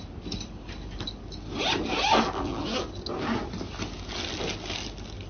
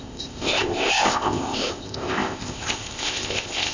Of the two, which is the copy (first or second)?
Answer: second